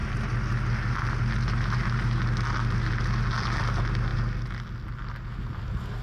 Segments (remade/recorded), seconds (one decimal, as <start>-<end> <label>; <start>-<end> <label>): 0.0-6.0 recorded